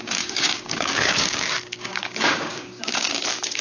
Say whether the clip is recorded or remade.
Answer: remade